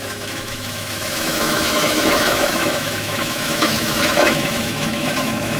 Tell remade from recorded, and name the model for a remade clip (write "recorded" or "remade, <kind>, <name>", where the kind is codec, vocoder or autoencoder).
remade, autoencoder, DAC-VAE